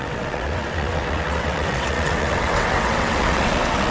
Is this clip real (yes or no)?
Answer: no